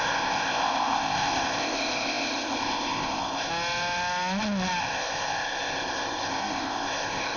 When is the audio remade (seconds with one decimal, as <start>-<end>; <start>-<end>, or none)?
0.0-3.5; 4.8-7.4